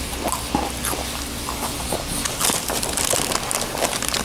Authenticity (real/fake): real